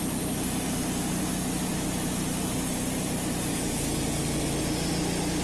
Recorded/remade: recorded